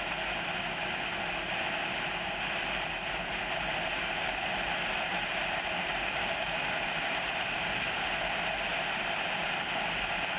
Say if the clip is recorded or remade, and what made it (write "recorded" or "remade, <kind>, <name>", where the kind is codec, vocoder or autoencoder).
recorded